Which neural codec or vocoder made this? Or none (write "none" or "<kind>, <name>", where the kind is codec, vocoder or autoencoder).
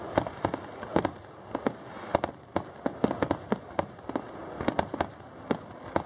none